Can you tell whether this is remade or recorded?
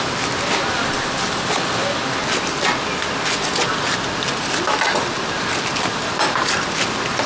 recorded